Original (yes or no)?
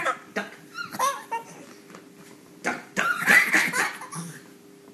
yes